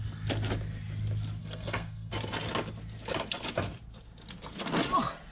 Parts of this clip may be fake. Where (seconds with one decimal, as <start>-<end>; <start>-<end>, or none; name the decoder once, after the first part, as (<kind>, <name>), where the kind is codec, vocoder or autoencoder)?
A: 1.4-2.1 (codec, SNAC)